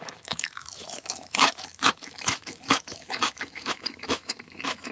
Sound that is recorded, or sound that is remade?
remade